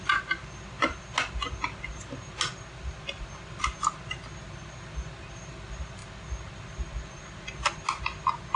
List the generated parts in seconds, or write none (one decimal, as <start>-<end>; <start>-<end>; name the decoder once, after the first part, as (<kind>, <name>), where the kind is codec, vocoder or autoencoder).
none